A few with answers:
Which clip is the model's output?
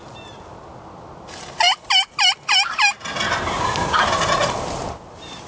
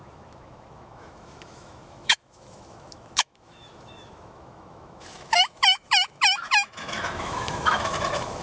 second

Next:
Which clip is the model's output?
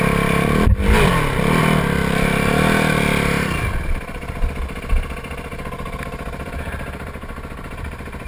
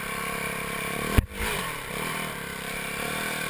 second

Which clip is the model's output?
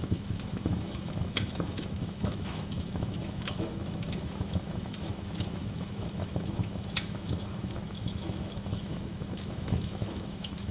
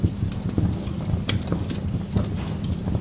first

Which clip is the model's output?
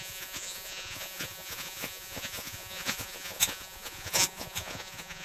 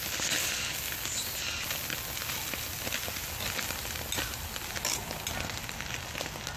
first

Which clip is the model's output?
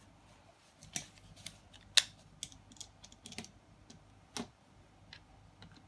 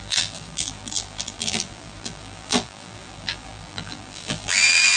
second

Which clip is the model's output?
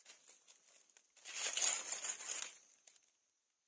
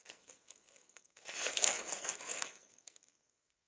second